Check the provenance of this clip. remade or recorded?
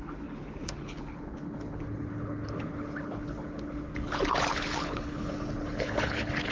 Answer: remade